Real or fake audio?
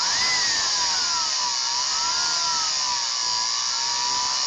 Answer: real